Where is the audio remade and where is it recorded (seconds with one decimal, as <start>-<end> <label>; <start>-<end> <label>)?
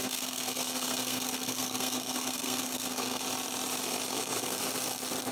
0.0-3.2 remade; 3.2-4.1 recorded; 4.1-4.6 remade; 4.6-5.3 recorded